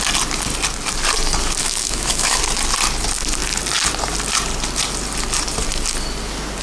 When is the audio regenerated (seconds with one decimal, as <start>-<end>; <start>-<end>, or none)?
1.6-2.4